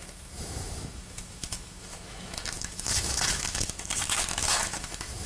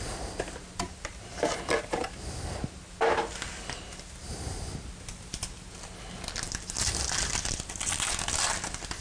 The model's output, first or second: first